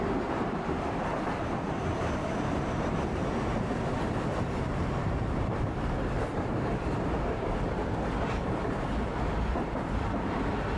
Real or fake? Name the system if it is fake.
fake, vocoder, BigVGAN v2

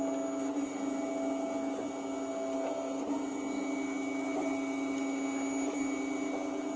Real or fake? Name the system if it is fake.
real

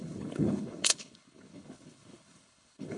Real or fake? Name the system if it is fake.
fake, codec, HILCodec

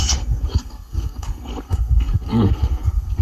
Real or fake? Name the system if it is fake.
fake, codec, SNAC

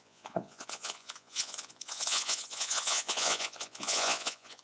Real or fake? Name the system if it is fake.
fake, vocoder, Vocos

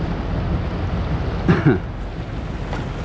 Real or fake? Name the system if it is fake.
real